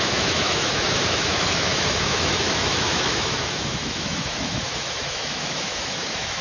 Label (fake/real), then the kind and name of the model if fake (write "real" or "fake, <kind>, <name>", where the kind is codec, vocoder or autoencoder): fake, autoencoder, DAC-VAE